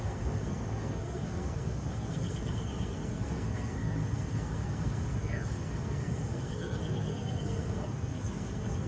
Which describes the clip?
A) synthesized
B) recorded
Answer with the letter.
A